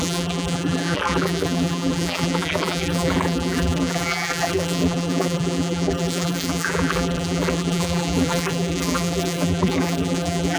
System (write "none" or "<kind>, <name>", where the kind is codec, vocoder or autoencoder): vocoder, BigVGAN v2